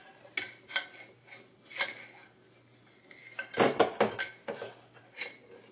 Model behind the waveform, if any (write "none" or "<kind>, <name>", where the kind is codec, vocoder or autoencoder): none